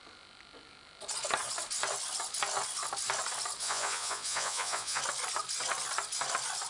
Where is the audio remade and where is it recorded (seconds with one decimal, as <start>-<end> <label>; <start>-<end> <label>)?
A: 0.0-3.6 recorded; 3.6-5.0 remade; 5.0-6.7 recorded